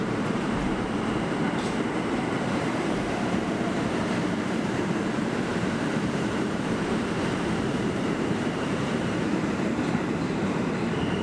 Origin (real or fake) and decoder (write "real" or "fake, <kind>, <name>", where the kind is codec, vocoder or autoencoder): fake, vocoder, BigVGAN v2